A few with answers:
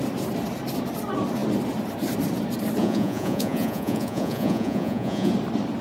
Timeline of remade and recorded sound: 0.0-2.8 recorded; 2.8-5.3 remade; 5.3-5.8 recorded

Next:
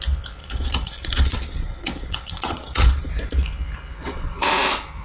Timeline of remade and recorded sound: 0.0-0.4 recorded; 0.4-3.1 remade; 3.1-4.0 recorded; 4.0-4.5 remade; 4.5-5.0 recorded

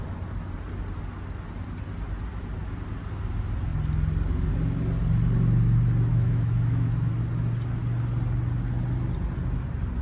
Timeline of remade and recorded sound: 0.0-6.1 recorded; 6.1-7.1 remade; 7.1-10.0 recorded

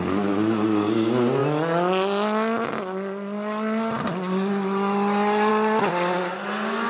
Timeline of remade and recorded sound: 0.0-6.9 recorded

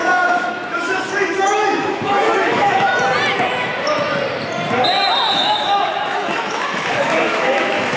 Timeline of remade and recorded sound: 0.0-2.9 remade; 2.9-5.3 recorded; 5.3-8.0 remade

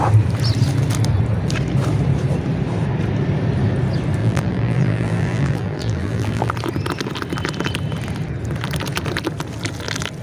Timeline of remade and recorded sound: 0.0-4.2 recorded; 4.2-6.5 remade; 6.5-10.2 recorded